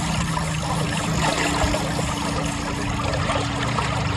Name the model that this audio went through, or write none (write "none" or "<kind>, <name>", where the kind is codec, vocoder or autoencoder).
none